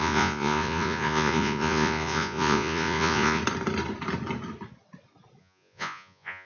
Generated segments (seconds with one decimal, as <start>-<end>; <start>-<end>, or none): 0.0-3.4; 5.4-6.5